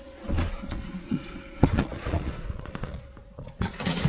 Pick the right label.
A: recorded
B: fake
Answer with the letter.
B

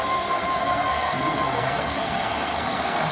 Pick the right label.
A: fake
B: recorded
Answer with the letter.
A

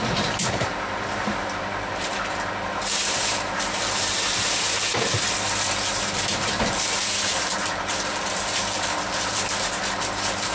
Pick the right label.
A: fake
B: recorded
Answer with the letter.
A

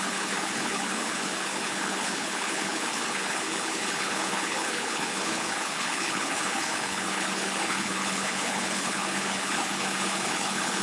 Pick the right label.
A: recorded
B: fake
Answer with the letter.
B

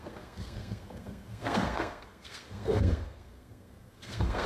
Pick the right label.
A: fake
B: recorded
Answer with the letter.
A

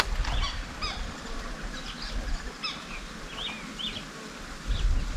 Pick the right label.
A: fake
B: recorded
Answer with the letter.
B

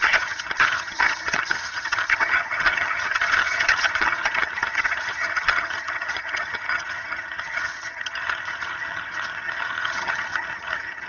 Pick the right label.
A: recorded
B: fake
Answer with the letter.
B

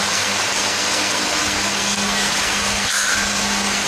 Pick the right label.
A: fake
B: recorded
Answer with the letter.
A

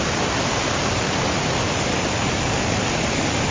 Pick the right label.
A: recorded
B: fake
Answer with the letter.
A